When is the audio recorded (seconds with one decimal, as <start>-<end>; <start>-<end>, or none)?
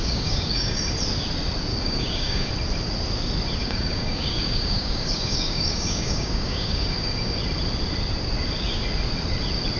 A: 0.9-1.7; 2.5-3.6; 7.4-9.8